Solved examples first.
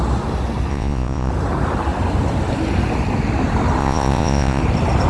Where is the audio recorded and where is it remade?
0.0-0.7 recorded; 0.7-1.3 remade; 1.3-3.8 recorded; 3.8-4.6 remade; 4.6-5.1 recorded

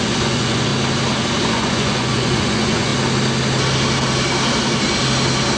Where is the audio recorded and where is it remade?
0.0-0.7 remade; 0.7-1.4 recorded; 1.4-2.9 remade; 2.9-5.6 recorded

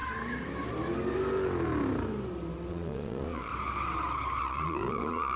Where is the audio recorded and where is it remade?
0.0-2.7 recorded; 2.7-3.5 remade; 3.5-4.4 recorded; 4.4-5.4 remade